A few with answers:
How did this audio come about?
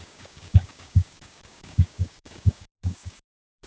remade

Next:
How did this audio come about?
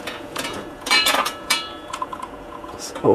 remade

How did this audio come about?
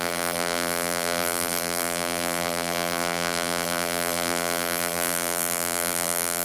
remade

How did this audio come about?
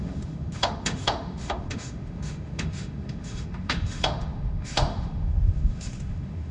remade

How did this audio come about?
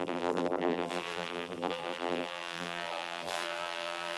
remade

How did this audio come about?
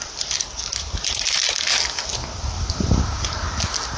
recorded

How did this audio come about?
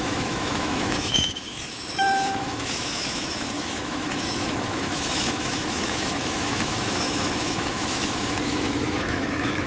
remade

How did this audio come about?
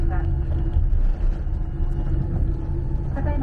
recorded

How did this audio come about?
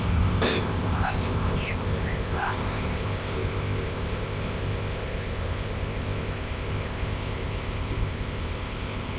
remade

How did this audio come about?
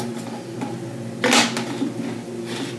recorded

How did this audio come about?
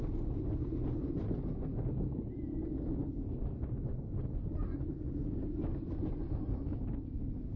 recorded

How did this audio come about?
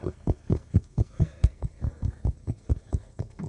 remade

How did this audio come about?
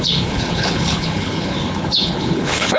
remade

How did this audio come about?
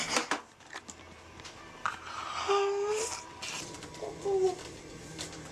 recorded